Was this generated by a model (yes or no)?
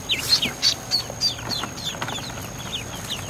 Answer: no